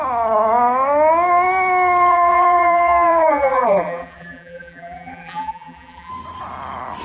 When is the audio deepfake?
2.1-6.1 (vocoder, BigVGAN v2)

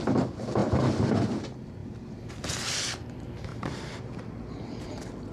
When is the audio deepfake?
1.8-2.3 (vocoder, BigVGAN v2)

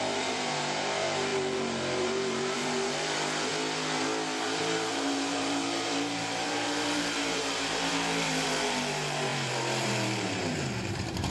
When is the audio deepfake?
0.0-3.5 (vocoder, BigVGAN v2); 4.6-11.3

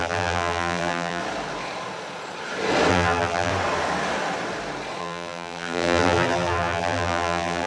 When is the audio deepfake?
0.0-1.2 (vocoder, BigVGAN v2); 2.9-3.5; 5.0-7.7